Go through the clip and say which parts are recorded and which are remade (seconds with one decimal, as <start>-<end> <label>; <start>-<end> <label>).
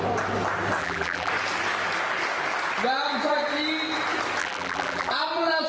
0.0-0.8 recorded; 0.8-1.3 remade; 1.3-4.4 recorded; 4.4-5.1 remade; 5.1-5.7 recorded